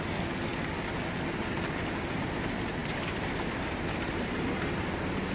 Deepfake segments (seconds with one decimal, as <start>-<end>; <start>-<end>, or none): none